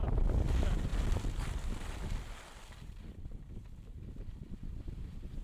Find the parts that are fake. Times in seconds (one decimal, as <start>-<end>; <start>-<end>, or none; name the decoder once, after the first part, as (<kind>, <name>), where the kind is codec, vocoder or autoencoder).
none